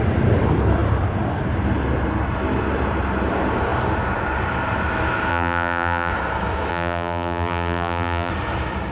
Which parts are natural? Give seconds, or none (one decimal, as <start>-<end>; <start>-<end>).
0.0-5.3; 6.1-6.7; 8.3-8.9